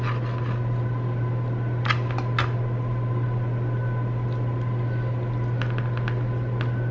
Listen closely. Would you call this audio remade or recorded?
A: recorded